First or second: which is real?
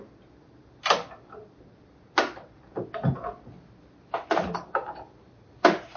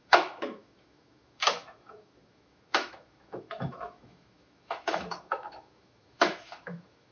first